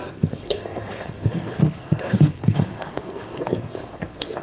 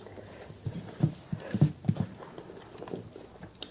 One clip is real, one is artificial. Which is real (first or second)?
second